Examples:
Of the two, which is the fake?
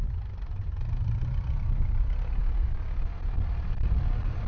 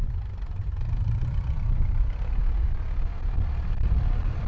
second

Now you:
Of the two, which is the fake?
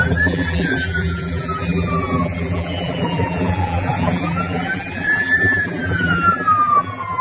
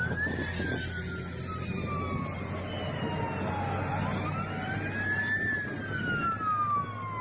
first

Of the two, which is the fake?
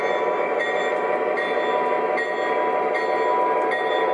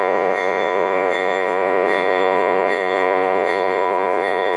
second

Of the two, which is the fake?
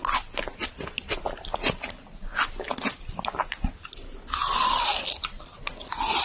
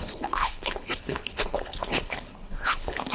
second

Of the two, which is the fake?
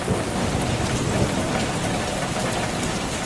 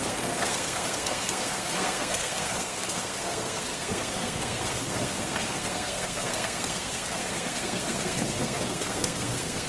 second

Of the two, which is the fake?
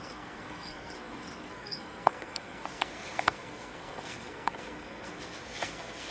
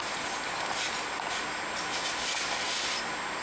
first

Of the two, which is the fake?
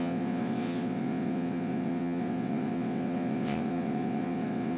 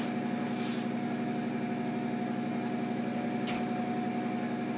first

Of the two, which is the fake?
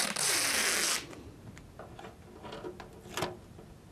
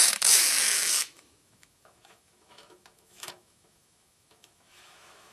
second